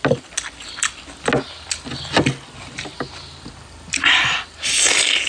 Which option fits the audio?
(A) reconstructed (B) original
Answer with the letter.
B